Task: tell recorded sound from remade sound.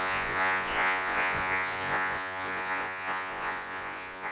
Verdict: remade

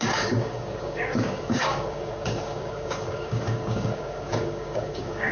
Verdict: remade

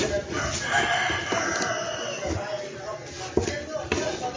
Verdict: recorded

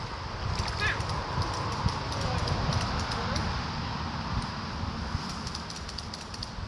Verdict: recorded